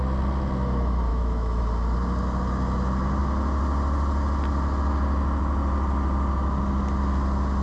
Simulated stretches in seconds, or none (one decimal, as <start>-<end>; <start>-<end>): 1.1-1.6